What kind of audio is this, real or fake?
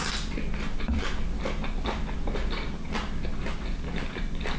real